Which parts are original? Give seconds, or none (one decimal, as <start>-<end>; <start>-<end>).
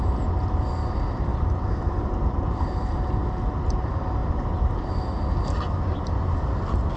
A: 0.0-1.3; 2.9-4.2; 4.9-7.0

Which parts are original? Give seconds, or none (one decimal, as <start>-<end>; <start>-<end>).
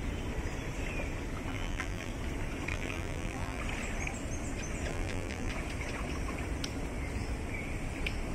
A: 0.0-1.5; 2.1-2.7; 3.6-4.9; 5.5-8.3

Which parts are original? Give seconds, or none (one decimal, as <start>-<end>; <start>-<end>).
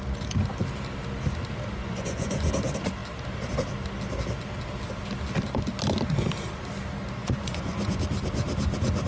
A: 0.0-1.8; 2.5-7.2; 8.0-9.1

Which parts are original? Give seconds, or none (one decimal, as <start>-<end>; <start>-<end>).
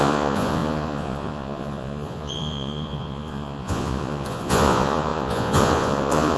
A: none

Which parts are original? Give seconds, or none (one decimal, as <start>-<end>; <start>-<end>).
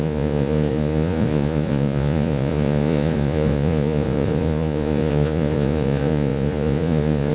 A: none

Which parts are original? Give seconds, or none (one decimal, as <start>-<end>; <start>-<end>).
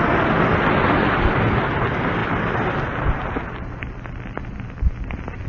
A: 0.0-5.5